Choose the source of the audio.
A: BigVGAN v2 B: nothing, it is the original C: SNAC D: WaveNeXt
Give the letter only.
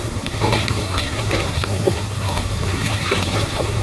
C